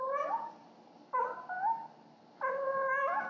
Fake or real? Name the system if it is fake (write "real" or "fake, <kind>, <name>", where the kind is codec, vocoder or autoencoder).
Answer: real